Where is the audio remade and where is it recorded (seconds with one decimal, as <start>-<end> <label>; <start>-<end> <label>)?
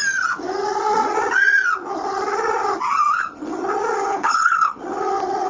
0.0-4.1 recorded; 4.1-4.8 remade; 4.8-5.5 recorded